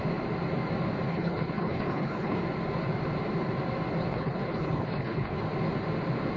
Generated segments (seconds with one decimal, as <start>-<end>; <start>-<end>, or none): 1.1-2.4; 4.1-5.4